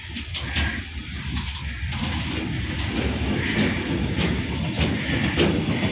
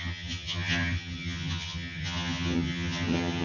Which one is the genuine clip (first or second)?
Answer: first